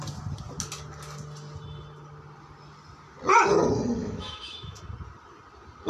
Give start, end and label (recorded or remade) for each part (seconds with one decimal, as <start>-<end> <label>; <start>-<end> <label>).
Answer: 0.0-4.0 recorded; 4.0-4.8 remade; 4.8-5.9 recorded